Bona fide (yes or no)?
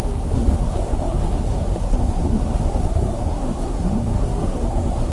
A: no